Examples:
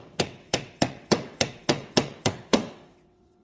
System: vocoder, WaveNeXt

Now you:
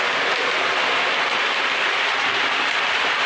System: none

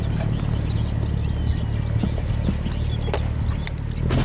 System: none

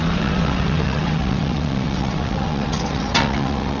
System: vocoder, WaveNeXt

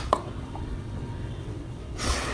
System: vocoder, WaveNeXt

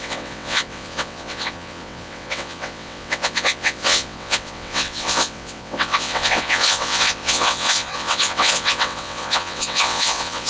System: vocoder, WaveNeXt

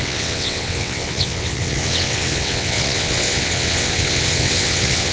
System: vocoder, WaveNeXt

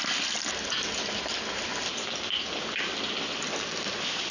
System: none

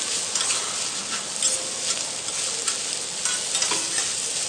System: none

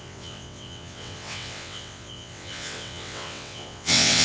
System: vocoder, WaveNeXt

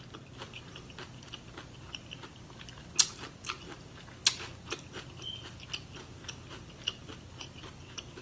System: none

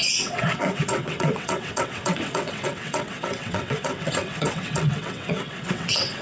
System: vocoder, WaveNeXt